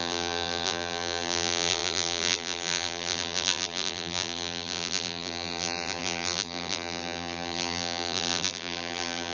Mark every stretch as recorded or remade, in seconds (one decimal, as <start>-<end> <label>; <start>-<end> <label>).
0.0-9.3 remade